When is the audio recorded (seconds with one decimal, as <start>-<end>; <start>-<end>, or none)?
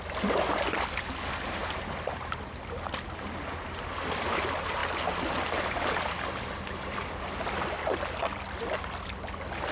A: 0.0-9.7